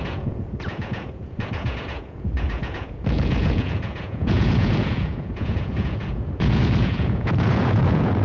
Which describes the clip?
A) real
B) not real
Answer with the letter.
B